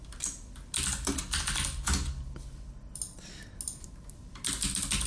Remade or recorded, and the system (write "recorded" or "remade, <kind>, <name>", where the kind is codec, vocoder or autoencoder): recorded